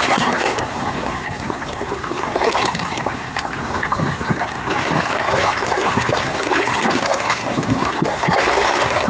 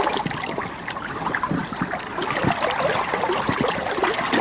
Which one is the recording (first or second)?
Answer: second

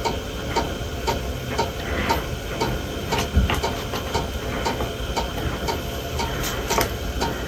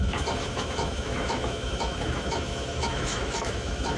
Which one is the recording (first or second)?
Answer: first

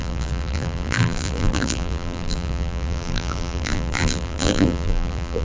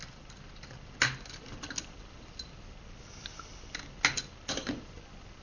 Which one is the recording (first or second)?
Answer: second